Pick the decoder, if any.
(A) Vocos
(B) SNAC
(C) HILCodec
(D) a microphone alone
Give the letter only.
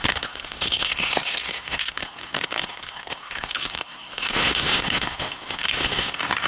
B